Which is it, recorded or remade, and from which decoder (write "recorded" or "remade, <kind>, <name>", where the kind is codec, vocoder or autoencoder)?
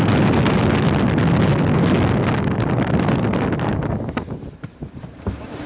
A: recorded